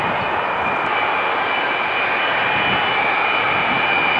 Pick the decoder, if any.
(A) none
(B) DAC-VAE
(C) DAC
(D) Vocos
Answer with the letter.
A